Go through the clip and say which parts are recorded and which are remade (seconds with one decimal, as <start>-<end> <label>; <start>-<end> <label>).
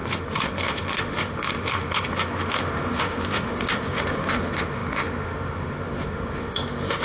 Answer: 0.0-7.0 remade